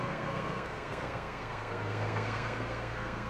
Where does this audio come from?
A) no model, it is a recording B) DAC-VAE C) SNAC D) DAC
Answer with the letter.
C